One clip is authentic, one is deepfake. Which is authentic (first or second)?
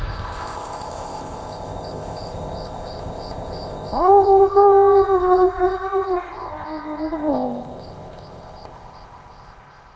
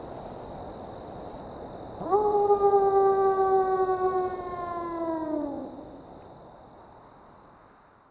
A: second